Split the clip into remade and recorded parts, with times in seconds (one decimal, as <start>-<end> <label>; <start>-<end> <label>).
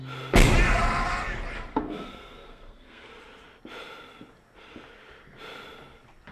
0.0-1.7 recorded; 1.7-3.1 remade; 3.1-6.3 recorded